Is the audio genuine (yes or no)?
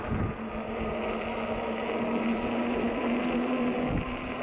yes